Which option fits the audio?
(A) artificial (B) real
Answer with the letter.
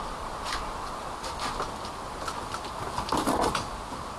B